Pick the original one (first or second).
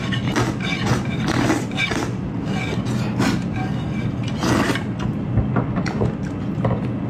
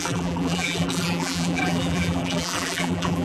first